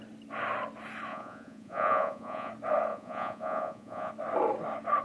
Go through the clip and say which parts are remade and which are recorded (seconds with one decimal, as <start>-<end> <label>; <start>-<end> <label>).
0.0-1.1 recorded; 1.1-2.5 remade; 2.5-2.9 recorded; 2.9-4.1 remade; 4.1-5.0 recorded